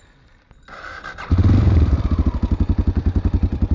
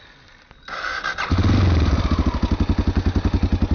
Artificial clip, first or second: first